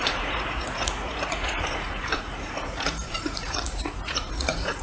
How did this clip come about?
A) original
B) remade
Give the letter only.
B